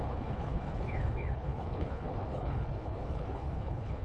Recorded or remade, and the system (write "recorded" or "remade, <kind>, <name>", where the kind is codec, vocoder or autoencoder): remade, codec, HILCodec